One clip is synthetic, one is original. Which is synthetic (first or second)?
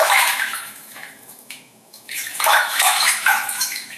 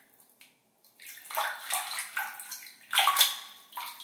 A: first